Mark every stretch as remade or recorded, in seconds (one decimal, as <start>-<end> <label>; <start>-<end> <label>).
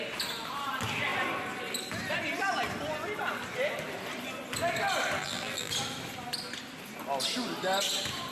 0.0-5.2 recorded; 5.2-5.7 remade; 5.7-8.3 recorded